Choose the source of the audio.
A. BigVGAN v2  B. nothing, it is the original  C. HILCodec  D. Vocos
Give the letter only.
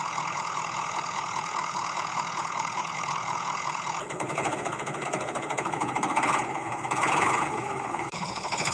C